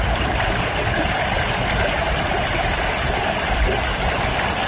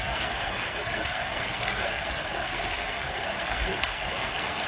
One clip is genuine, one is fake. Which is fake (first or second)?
second